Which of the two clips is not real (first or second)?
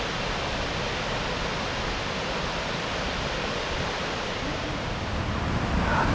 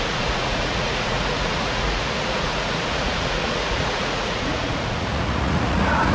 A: second